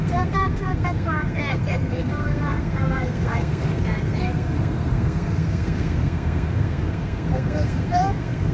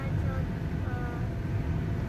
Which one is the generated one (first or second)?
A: first